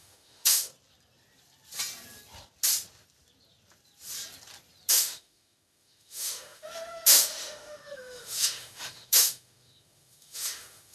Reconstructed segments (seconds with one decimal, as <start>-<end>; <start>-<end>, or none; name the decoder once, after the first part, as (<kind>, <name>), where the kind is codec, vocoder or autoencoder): 0.0-0.7 (autoencoder, DAC-VAE); 4.9-10.9